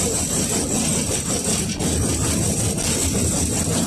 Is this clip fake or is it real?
real